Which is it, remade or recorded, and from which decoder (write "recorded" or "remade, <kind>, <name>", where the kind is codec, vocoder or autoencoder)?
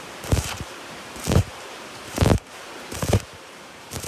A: remade, vocoder, BigVGAN v2